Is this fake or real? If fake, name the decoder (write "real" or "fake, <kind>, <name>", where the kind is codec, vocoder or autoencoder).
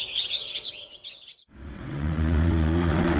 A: fake, vocoder, WaveNeXt